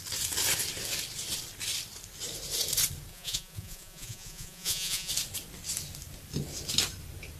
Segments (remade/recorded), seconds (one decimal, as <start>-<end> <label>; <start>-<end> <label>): 0.0-3.1 recorded; 3.1-5.1 remade; 5.1-7.4 recorded